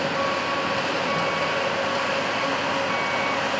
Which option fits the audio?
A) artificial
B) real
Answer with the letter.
B